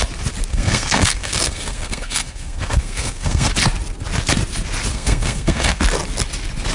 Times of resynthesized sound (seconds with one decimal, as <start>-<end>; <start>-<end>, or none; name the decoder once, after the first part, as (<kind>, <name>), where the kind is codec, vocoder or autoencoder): 0.5-3.5 (codec, SNAC); 4.9-5.8